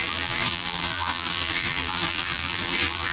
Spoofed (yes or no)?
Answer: yes